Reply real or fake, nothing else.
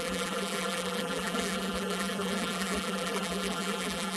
fake